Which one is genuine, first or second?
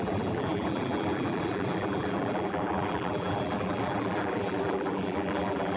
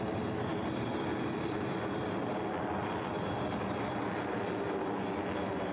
second